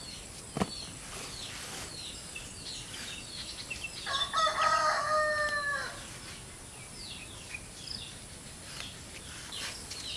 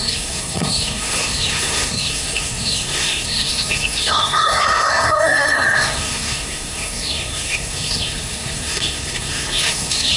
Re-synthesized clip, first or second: second